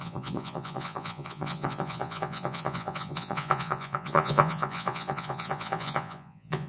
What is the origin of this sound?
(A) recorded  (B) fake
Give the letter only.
B